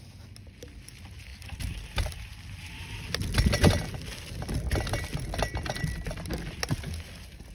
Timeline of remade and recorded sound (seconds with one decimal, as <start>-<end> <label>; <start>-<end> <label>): 0.0-7.5 recorded